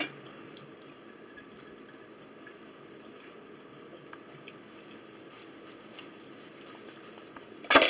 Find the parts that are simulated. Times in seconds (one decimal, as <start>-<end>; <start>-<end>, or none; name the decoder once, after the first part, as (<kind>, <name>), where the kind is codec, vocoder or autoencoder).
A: none